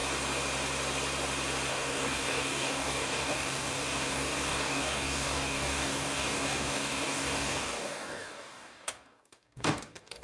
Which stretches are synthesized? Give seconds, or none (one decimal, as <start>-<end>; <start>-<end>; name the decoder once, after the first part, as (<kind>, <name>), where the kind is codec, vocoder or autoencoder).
1.7-10.2 (codec, DAC)